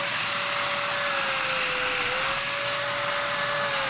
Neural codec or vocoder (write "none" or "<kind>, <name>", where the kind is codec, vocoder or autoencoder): none